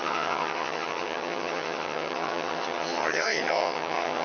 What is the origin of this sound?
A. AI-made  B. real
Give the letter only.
A